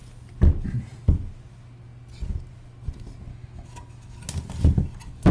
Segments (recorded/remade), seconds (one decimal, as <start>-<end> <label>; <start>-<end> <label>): 0.0-3.3 recorded; 3.3-4.2 remade; 4.2-5.3 recorded